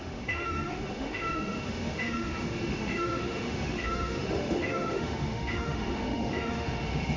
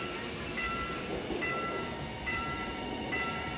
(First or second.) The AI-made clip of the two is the first